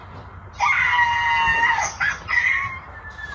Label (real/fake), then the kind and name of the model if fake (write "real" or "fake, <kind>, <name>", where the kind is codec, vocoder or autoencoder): real